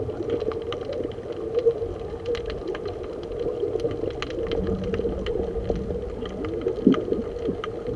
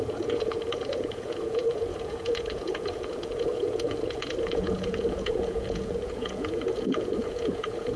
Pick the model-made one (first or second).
second